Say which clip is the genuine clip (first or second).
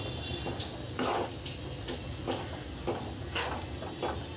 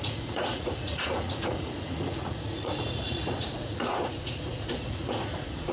first